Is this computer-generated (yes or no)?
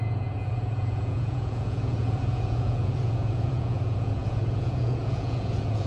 yes